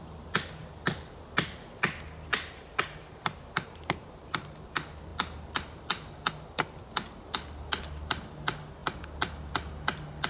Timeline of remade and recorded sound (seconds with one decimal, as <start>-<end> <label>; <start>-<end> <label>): 0.0-2.3 recorded; 2.3-4.6 remade; 4.6-10.3 recorded